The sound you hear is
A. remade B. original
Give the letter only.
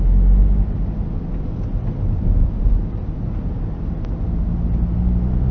B